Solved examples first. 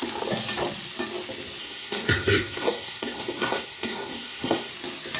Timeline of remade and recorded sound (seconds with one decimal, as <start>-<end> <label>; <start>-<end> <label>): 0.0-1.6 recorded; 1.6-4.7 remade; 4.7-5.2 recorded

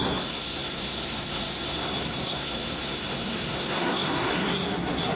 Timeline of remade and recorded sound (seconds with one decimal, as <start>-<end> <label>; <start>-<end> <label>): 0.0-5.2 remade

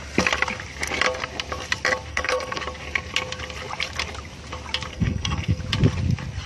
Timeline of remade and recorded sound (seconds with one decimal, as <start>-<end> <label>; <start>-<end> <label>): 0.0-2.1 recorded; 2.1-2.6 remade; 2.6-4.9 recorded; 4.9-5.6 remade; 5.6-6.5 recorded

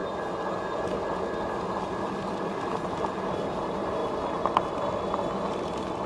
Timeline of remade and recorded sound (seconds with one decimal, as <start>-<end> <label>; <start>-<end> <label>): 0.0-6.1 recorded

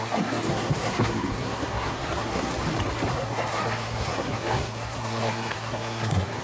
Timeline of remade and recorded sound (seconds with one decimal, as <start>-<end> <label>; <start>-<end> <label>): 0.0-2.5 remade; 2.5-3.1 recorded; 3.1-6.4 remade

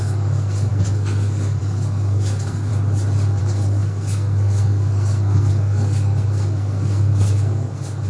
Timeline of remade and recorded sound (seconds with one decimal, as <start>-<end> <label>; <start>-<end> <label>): 0.0-2.7 remade; 2.7-3.4 recorded; 3.4-8.1 remade